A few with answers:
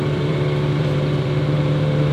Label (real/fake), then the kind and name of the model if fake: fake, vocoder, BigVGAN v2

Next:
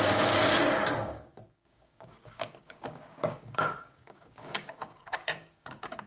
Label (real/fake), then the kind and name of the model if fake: fake, codec, DAC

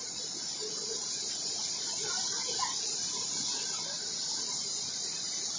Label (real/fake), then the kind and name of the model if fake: real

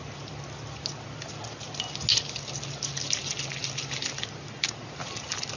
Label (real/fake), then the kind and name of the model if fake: real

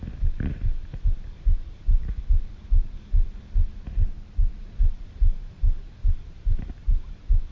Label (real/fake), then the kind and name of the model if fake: real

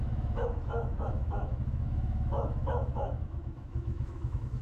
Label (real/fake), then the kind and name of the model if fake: fake, autoencoder, DAC-VAE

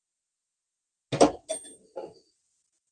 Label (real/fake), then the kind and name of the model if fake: real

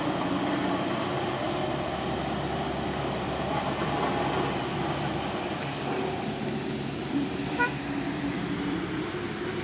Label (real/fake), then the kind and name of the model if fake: fake, vocoder, BigVGAN v2